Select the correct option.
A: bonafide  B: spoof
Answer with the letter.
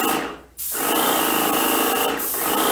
A